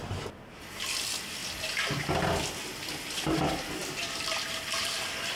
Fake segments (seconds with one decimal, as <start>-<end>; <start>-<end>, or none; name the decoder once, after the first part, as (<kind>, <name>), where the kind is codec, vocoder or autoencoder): none